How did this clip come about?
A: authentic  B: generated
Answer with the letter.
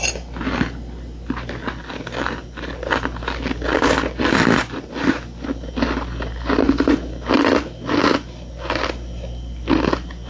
A